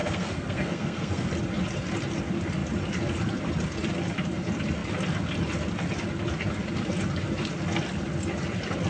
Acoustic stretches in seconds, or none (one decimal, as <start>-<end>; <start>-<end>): 1.3-8.9